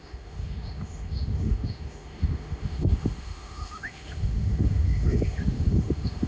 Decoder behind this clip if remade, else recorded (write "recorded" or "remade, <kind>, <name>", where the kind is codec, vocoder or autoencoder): remade, autoencoder, DAC-VAE